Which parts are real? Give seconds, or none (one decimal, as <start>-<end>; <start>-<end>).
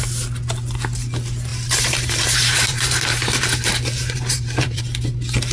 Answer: 0.0-1.5; 4.8-5.5